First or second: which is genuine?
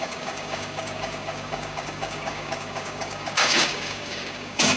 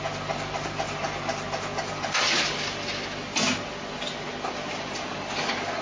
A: second